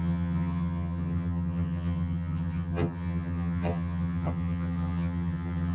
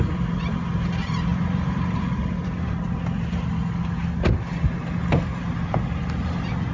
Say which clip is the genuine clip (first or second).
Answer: second